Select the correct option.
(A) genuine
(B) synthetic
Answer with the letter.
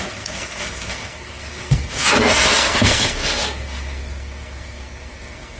B